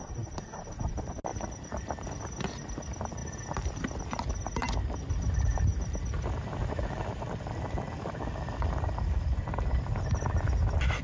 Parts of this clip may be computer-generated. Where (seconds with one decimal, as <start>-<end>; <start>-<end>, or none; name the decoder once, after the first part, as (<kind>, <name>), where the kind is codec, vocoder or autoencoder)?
none